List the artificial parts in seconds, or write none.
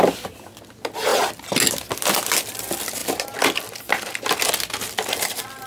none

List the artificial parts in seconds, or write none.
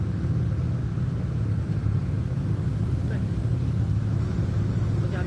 none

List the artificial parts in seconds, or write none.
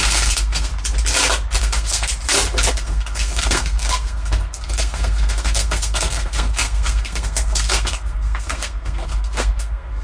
0.0-0.7; 1.6-2.1; 2.7-10.0